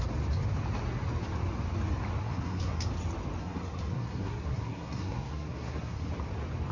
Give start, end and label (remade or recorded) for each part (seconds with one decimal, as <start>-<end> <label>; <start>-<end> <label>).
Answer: 0.0-2.2 recorded; 2.2-2.8 remade; 2.8-3.4 recorded; 3.4-6.1 remade; 6.1-6.7 recorded